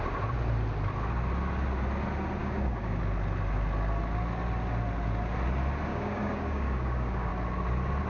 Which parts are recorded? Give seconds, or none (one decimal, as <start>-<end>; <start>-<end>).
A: 0.0-2.4; 3.0-5.9; 7.3-8.1

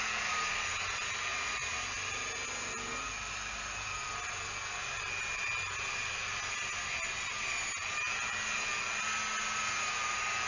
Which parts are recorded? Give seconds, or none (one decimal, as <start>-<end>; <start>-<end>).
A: 0.0-1.3; 1.8-10.5

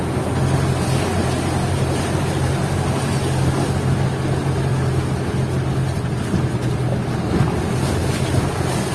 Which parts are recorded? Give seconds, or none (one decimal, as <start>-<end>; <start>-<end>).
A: 0.0-8.9

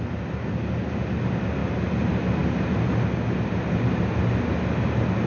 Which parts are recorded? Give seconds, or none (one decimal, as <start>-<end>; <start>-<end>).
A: 0.0-5.3

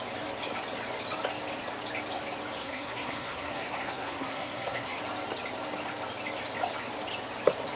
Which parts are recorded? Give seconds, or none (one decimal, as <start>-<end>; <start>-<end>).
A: 0.0-2.6; 5.0-7.8

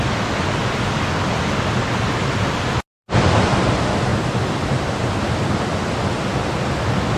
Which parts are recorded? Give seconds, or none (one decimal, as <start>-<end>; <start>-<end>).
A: 0.0-4.1; 4.9-7.2